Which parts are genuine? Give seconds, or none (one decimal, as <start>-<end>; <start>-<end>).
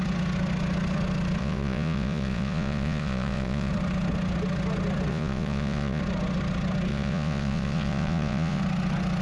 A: 0.0-1.4; 3.7-5.1; 6.0-6.9; 8.6-9.2